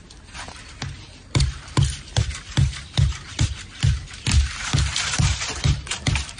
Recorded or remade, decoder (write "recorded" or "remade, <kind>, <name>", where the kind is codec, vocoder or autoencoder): recorded